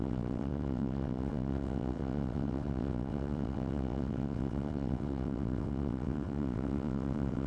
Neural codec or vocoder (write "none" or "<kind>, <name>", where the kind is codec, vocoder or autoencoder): vocoder, WaveNeXt